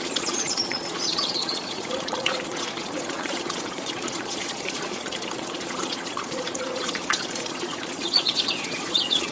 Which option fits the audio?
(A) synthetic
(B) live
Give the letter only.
A